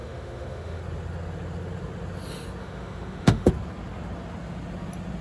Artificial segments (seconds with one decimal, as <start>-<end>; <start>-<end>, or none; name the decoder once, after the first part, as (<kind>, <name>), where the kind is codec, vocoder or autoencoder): 0.0-0.8 (autoencoder, DAC-VAE); 2.6-3.5